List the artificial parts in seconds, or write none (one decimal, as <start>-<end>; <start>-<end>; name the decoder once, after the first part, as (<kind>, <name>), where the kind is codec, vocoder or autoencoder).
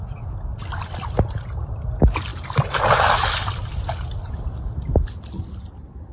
none